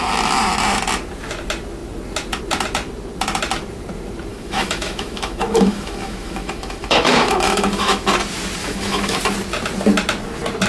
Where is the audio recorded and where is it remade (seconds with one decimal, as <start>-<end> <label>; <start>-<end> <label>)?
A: 0.0-4.3 recorded; 4.3-8.1 remade; 8.1-8.6 recorded; 8.6-9.2 remade; 9.2-10.7 recorded